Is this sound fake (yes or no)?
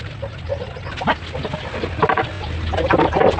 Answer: no